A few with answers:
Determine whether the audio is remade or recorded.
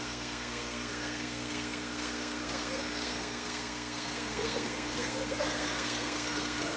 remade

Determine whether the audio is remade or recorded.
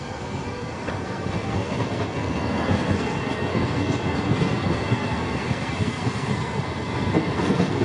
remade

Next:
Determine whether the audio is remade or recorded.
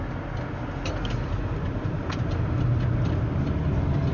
recorded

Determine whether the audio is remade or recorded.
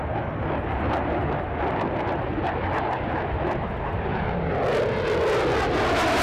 recorded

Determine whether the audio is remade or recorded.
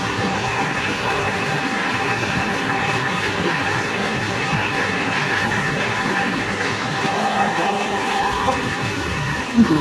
remade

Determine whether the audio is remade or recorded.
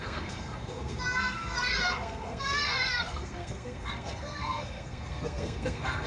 remade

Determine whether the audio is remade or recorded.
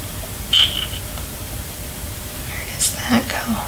recorded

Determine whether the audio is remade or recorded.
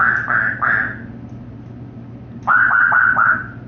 recorded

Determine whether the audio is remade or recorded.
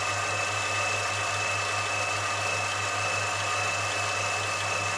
recorded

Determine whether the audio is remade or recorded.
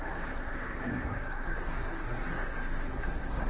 remade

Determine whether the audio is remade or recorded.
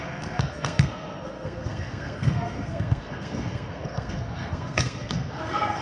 remade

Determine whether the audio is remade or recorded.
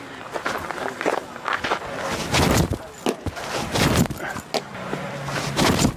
recorded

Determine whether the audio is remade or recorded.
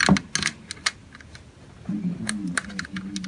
recorded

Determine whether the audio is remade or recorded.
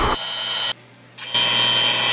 recorded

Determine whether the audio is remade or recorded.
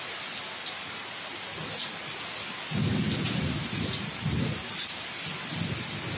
recorded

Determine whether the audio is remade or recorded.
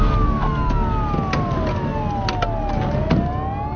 recorded